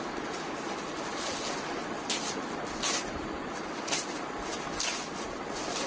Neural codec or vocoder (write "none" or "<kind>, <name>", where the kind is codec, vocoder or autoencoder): none